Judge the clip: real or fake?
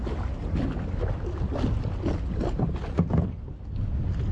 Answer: real